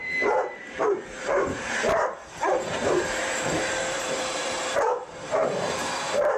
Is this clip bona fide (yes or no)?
no